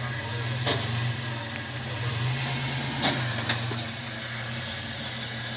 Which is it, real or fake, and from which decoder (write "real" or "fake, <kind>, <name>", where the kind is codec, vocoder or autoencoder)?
real